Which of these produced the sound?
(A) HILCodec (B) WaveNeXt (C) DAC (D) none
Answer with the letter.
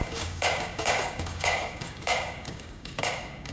C